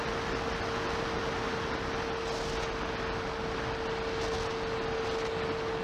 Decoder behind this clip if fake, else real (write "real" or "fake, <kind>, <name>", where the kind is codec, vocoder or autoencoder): real